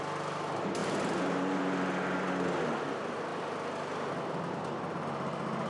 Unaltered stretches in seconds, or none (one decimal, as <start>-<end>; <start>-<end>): 0.0-0.8; 1.6-5.7